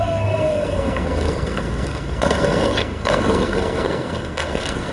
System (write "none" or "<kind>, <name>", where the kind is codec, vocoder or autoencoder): codec, SNAC